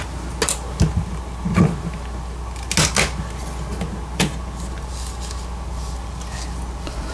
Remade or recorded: recorded